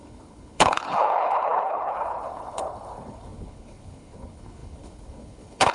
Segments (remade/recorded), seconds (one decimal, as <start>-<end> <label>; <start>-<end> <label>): 0.0-5.7 remade